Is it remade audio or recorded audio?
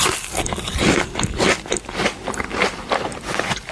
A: recorded